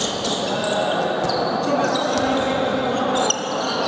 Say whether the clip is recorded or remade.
recorded